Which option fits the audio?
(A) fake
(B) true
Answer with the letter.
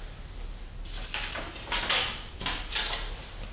B